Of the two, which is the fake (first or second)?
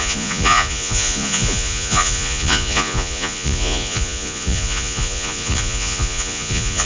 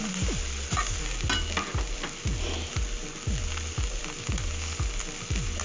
first